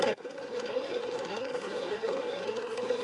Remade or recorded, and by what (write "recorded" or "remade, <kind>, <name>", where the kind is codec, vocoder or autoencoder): remade, codec, SNAC